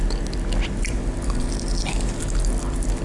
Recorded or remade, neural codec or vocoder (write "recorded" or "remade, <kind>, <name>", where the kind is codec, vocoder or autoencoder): recorded